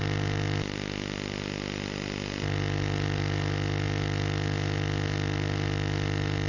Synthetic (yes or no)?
no